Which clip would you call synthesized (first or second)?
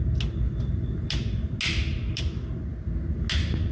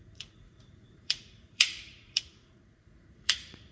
second